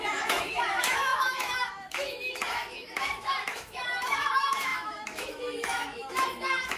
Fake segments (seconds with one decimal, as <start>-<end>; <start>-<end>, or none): 0.0-6.8